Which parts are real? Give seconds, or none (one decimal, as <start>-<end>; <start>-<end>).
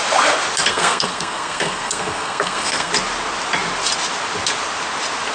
0.0-0.7; 2.9-5.3